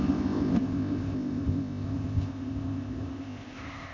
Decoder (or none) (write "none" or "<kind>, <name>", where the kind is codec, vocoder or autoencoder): codec, ZipCodec